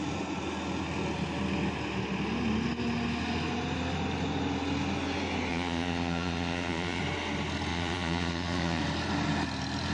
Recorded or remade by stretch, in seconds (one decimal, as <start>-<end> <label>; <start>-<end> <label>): 0.0-5.5 recorded; 5.5-7.0 remade; 7.0-7.7 recorded; 7.7-8.8 remade; 8.8-9.9 recorded